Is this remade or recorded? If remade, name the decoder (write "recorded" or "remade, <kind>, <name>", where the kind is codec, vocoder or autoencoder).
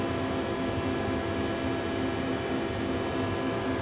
recorded